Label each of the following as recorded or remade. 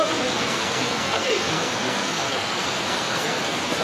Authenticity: remade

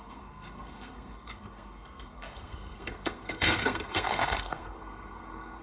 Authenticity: remade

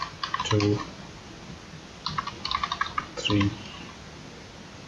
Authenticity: recorded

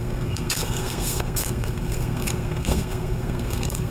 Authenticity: remade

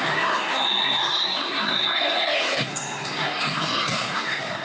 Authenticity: remade